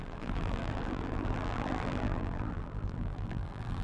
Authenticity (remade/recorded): remade